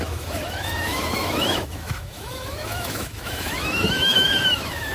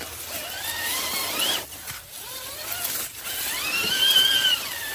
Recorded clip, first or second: second